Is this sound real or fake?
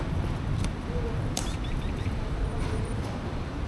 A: fake